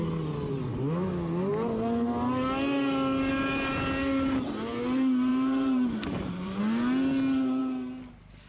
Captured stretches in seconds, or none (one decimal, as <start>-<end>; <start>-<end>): 0.0-5.3; 6.6-8.5